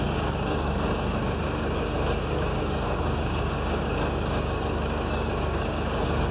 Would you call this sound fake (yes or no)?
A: yes